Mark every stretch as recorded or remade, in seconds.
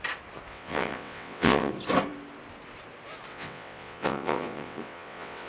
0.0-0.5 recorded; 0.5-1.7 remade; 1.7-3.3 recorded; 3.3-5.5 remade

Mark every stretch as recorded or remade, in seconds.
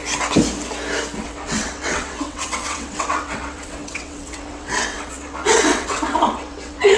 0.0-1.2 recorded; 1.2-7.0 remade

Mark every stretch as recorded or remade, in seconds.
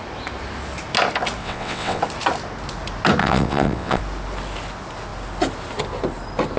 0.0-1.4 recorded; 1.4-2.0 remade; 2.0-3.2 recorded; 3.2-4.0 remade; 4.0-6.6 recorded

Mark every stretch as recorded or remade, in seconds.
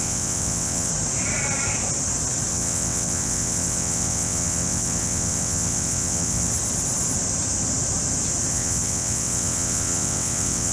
0.0-0.9 remade; 0.9-2.5 recorded; 2.5-6.5 remade; 6.5-8.5 recorded; 8.5-10.7 remade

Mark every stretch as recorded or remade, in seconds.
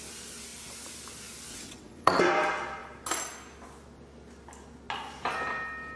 0.0-1.5 recorded; 1.5-2.2 remade; 2.2-6.0 recorded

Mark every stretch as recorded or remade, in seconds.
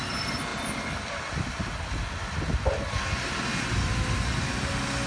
0.0-5.1 recorded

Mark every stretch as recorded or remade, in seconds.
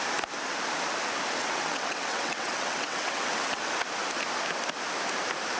0.0-1.4 recorded; 1.4-3.6 remade; 3.6-5.6 recorded